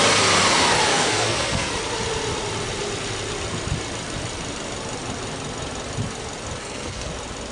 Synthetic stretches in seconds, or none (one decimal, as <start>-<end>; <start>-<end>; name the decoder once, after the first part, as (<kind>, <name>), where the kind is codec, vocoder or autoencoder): 0.9-1.7 (codec, SNAC); 6.6-7.1